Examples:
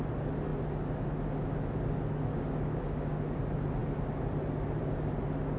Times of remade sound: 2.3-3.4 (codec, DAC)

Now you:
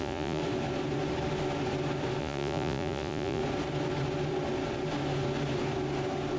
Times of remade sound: 0.0-0.4 (vocoder, Vocos); 2.2-3.4

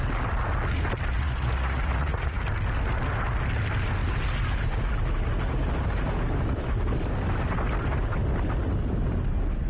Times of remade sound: 1.1-2.4 (vocoder, Vocos)

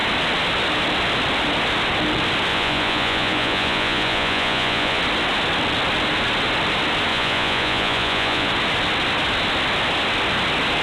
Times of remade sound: 2.5-5.0 (vocoder, Vocos); 7.1-8.5

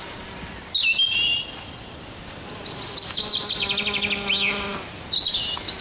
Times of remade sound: none

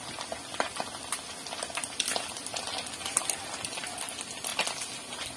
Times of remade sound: none